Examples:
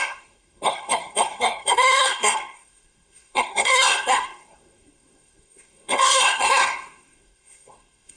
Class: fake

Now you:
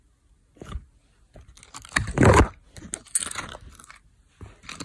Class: real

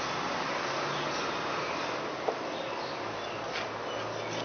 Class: real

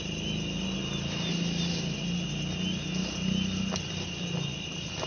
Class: real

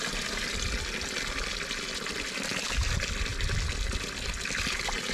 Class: real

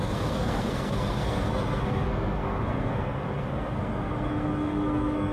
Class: fake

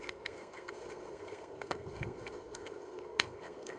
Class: fake